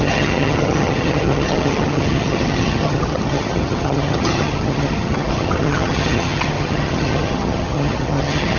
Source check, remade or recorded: remade